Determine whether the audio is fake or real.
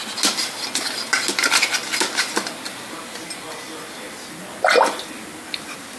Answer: real